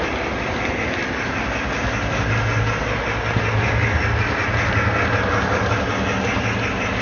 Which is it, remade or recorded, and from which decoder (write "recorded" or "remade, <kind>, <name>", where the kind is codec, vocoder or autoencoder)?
recorded